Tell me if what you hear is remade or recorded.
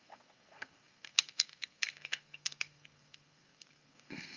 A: remade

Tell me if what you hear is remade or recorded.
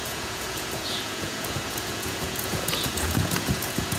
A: remade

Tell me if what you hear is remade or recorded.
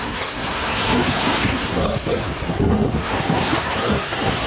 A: remade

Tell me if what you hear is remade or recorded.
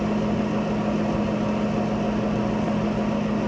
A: recorded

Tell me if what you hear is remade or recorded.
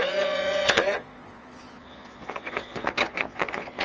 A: remade